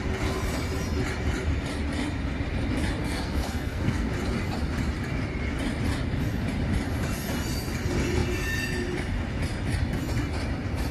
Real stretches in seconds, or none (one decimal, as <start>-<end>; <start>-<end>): 0.0-3.0; 4.1-10.9